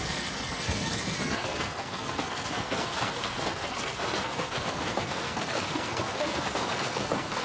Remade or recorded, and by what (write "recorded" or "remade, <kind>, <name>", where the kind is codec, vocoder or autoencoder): remade, codec, SNAC